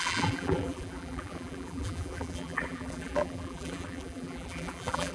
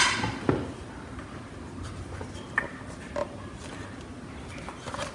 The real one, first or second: second